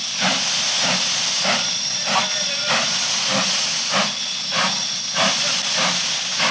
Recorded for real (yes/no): yes